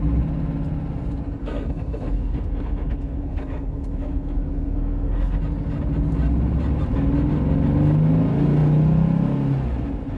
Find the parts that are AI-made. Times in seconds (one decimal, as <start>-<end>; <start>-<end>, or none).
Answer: 1.4-5.4